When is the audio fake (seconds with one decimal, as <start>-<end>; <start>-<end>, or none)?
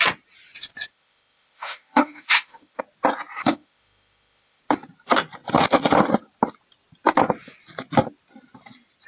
0.9-2.8; 3.4-4.6